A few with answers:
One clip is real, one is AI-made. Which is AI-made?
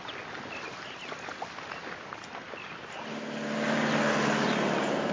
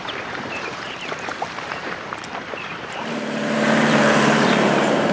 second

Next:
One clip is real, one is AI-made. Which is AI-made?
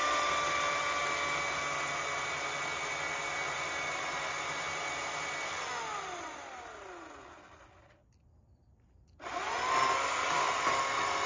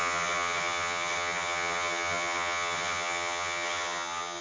second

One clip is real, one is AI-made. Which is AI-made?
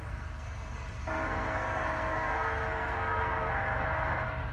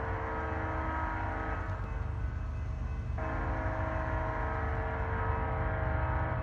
first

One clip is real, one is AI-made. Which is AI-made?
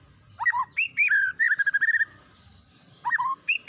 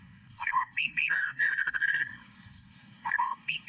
second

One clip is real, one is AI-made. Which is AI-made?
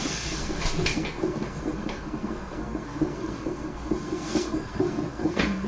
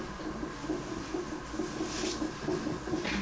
first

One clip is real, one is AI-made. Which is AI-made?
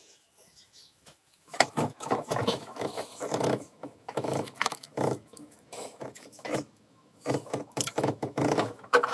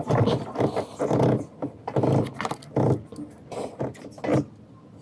first